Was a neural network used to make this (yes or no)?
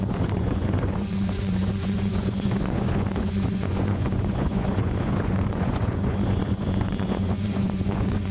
yes